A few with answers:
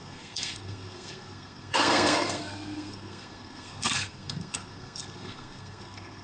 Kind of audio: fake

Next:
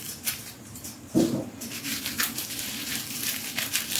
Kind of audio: fake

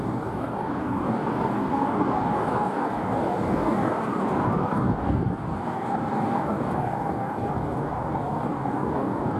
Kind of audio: fake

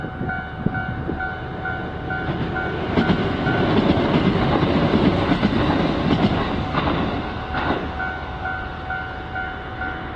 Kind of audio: real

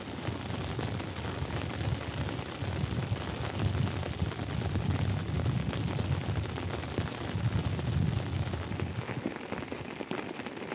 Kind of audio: real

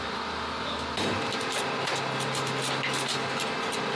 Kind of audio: real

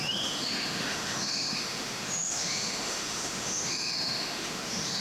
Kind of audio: fake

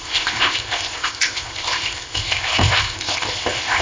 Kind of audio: fake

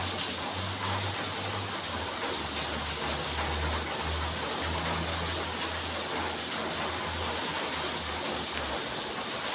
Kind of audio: real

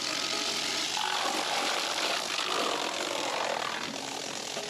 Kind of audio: real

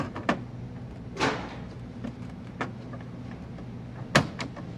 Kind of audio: real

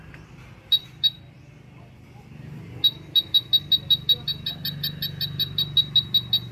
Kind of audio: real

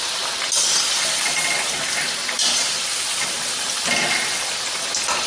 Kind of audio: real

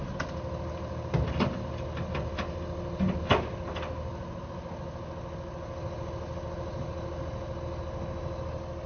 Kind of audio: real